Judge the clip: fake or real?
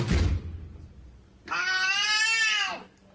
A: real